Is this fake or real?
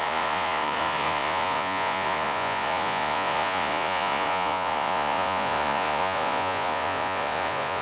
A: fake